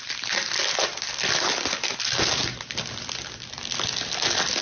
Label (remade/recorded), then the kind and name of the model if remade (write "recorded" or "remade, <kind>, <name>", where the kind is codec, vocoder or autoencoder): remade, vocoder, BigVGAN v2